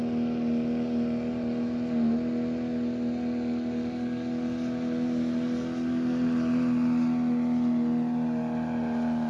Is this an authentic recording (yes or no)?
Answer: yes